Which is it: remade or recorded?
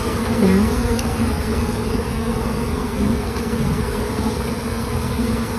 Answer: remade